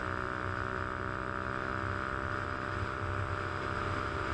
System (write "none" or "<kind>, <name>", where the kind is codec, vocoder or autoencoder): none